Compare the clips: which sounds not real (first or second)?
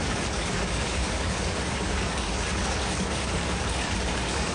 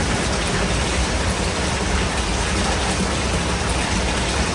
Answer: first